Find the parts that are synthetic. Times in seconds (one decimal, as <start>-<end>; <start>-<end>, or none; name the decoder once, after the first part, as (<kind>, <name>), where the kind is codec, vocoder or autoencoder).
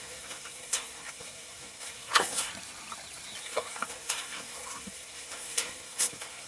0.0-2.5 (codec, SNAC); 3.4-6.5